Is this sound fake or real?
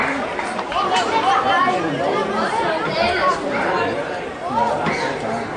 real